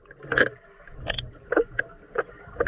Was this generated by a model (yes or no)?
no